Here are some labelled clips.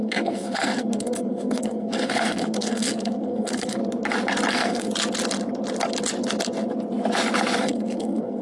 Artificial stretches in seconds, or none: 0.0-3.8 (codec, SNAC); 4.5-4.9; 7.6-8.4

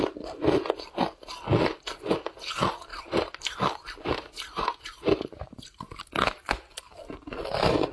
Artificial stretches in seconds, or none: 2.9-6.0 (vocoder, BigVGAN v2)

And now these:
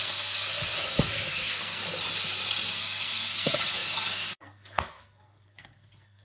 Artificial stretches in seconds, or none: 0.0-1.8 (codec, SNAC); 2.7-6.2

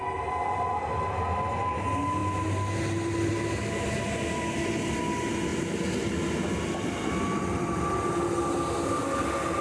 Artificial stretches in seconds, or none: none

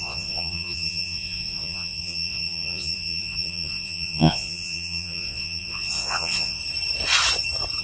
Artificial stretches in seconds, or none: 0.0-6.6 (vocoder, Vocos)